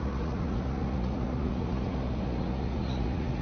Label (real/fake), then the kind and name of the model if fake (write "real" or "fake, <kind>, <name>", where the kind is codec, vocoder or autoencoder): fake, vocoder, Vocos